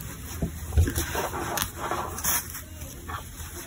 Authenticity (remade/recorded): recorded